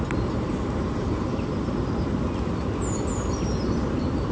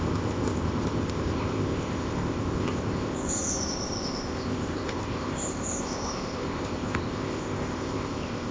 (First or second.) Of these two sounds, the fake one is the second